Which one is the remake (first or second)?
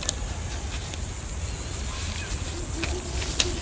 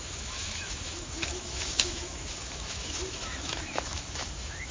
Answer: second